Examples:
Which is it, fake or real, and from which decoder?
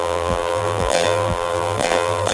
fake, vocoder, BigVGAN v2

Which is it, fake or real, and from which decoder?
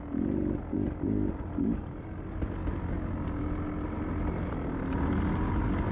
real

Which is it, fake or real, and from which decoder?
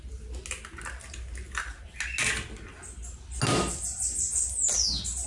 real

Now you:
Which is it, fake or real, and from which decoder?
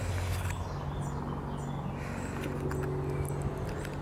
real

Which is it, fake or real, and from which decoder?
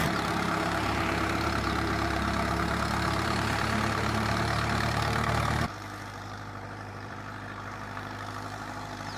fake, vocoder, BigVGAN v2